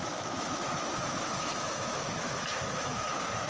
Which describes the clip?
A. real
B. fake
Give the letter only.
B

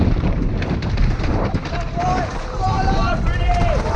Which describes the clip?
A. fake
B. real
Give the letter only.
A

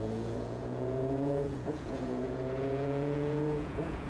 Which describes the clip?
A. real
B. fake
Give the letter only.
B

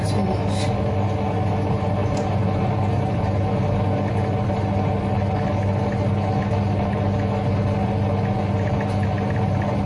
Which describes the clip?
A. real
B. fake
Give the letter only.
A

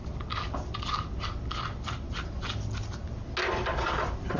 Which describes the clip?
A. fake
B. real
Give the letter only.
B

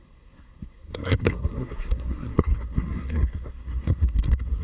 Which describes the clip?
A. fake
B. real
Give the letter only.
A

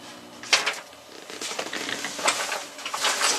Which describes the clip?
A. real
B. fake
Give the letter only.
A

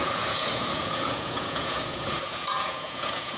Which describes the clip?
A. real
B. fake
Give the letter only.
B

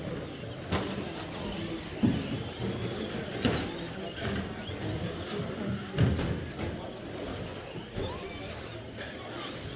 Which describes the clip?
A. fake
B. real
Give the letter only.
B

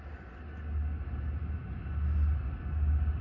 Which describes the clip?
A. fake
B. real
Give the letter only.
B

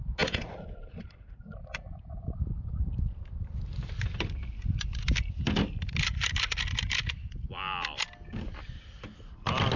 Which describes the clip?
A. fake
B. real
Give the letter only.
B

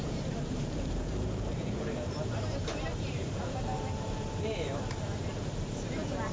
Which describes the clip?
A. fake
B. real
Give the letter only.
A